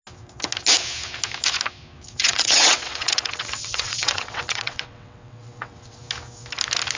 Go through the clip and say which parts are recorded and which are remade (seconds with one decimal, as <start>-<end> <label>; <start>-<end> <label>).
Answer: 0.0-2.2 recorded; 2.2-6.0 remade; 6.0-7.0 recorded

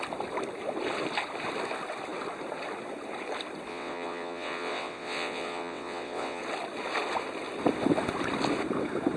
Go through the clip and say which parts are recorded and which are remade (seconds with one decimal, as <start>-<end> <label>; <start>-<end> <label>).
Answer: 0.0-3.7 recorded; 3.7-6.4 remade; 6.4-9.2 recorded

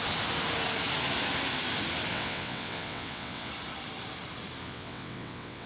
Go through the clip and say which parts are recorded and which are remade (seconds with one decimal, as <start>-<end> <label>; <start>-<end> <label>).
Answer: 0.0-2.1 recorded; 2.1-3.5 remade; 3.5-4.6 recorded; 4.6-5.7 remade

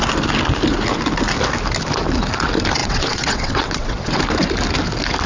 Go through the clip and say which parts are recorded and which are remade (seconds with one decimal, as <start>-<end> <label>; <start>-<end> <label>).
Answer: 0.0-2.8 recorded; 2.8-4.2 remade; 4.2-5.3 recorded

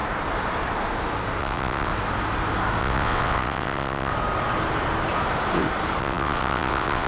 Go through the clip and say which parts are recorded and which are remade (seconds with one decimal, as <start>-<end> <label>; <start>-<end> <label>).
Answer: 0.0-1.4 recorded; 1.4-1.9 remade; 1.9-2.8 recorded; 2.8-4.1 remade; 4.1-6.0 recorded; 6.0-7.1 remade